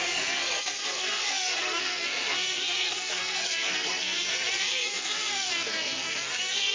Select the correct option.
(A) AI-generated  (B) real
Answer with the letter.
A